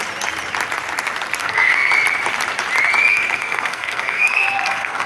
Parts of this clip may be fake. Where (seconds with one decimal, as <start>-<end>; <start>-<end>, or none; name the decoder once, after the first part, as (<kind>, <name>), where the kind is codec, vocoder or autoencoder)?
1.4-1.9 (codec, SNAC); 3.1-5.1